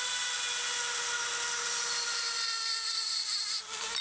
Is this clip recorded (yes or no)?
yes